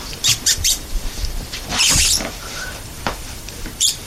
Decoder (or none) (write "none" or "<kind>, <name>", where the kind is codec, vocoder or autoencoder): vocoder, BigVGAN v2